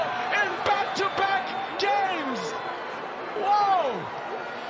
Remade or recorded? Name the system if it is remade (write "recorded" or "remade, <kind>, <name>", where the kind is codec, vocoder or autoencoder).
recorded